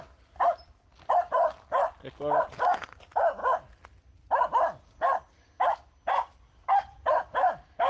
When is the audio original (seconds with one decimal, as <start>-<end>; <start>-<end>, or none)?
0.0-7.9